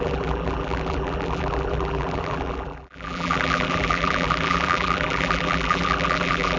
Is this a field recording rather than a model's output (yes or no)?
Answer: no